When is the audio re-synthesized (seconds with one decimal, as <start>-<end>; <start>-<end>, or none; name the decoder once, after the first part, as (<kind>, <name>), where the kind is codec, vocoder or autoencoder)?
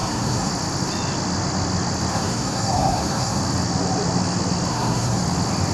0.0-0.5 (codec, SNAC); 2.1-3.4; 4.7-5.2